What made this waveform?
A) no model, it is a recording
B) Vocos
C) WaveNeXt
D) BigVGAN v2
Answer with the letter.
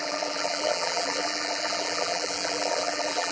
D